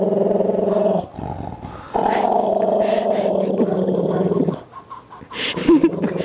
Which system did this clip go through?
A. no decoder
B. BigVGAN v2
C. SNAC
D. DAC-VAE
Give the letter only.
A